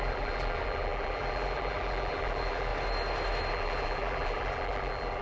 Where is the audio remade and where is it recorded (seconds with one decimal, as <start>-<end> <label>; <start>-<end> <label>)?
0.0-2.7 remade; 2.7-3.5 recorded; 3.5-5.2 remade

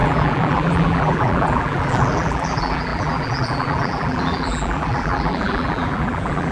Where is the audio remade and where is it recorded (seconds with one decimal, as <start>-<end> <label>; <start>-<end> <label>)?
0.0-6.5 remade

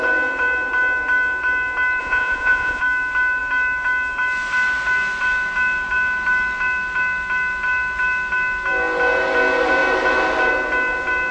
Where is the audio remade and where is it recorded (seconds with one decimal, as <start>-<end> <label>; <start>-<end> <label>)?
0.0-2.0 recorded; 2.0-2.8 remade; 2.8-11.3 recorded

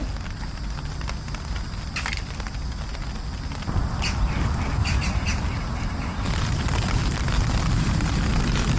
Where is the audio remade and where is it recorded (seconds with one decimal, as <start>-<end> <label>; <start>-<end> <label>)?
0.0-8.8 recorded